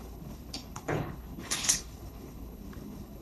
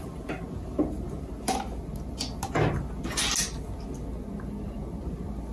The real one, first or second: second